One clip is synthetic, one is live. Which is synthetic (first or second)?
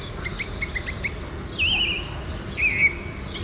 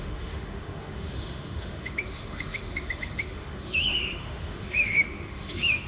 second